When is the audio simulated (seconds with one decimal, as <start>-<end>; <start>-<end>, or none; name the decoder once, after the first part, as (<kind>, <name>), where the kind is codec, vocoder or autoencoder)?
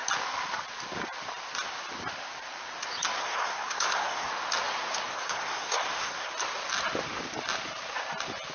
3.2-4.3 (codec, SNAC); 5.1-6.3